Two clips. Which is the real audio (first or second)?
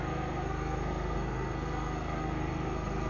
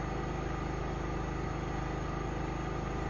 second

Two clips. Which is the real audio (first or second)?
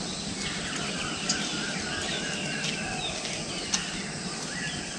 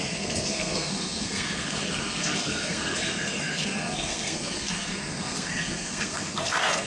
first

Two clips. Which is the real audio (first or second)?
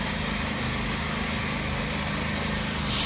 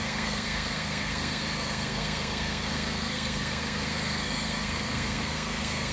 first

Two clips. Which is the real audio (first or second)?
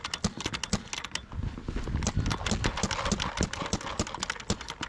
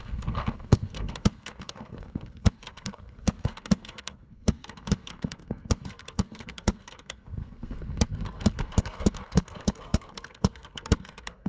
first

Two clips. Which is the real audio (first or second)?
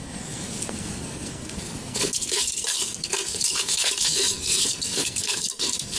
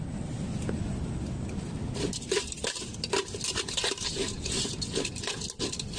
second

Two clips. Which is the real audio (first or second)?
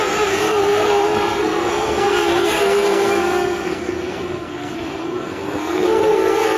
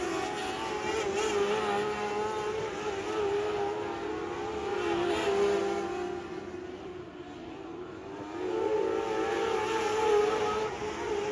second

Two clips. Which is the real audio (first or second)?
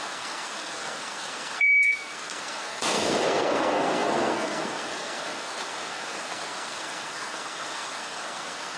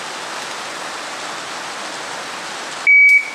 second